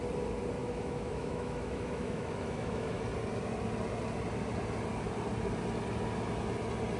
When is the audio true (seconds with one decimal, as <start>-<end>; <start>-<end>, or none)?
0.0-0.6; 3.0-7.0